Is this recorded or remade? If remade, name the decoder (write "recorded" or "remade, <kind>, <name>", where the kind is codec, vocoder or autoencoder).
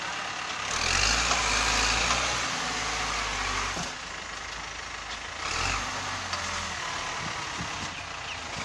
recorded